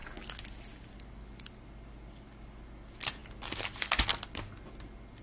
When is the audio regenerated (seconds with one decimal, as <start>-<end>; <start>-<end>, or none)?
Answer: none